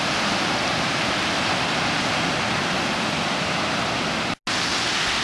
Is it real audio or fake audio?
real